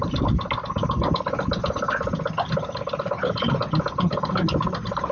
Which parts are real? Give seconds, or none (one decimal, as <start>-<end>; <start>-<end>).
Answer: 0.0-5.1